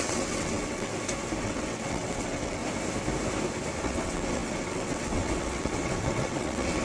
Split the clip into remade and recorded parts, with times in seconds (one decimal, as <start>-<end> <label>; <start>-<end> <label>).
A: 0.0-0.9 remade; 0.9-1.4 recorded; 1.4-2.6 remade; 2.6-3.8 recorded; 3.8-6.8 remade